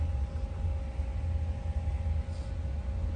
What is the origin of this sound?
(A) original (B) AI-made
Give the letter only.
A